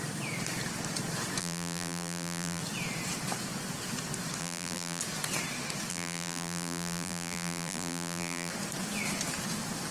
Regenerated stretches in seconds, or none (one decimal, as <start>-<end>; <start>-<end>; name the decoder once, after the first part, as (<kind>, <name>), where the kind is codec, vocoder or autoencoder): 1.4-2.6 (vocoder, BigVGAN v2); 4.4-5.0; 5.9-8.5